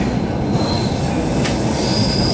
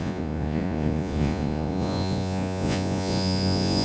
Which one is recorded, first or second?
first